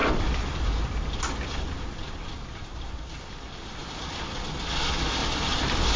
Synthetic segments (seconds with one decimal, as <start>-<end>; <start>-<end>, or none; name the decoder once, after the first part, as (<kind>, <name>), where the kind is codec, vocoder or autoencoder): 0.0-2.1 (vocoder, BigVGAN v2); 3.8-4.4; 5.2-6.0